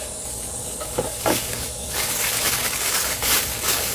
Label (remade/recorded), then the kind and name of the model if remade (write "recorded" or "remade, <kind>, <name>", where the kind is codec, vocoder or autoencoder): remade, codec, DAC